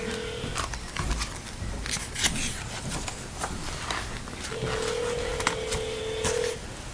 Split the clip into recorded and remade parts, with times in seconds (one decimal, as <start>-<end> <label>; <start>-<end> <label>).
0.0-6.9 recorded